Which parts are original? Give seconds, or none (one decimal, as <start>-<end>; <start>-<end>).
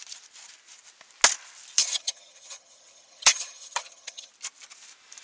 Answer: 0.0-1.8; 4.3-5.2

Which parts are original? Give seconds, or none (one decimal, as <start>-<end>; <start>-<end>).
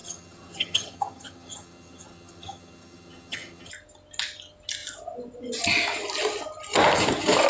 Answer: 3.7-7.5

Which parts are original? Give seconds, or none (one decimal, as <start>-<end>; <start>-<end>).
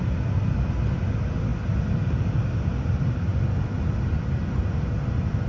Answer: 0.0-5.5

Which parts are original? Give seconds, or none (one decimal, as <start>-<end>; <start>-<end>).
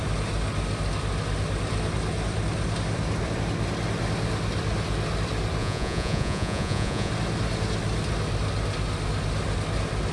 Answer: 0.0-5.6; 7.1-10.1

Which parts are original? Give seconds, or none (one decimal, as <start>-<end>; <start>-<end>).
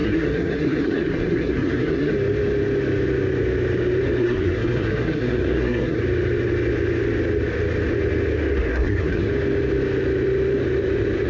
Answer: 2.1-4.2; 6.0-8.7; 9.3-11.3